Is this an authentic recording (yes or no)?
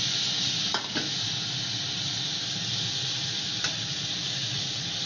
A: yes